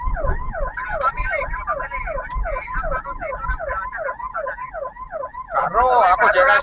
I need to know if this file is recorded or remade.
recorded